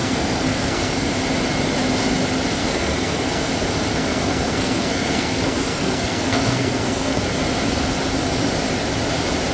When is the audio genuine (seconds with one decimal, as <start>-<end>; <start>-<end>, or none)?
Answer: 1.1-2.6; 3.5-3.9; 7.2-9.5